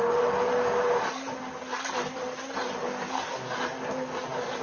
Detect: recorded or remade recorded